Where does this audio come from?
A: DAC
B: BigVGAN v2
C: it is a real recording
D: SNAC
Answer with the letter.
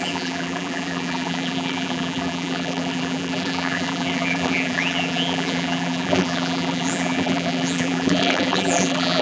B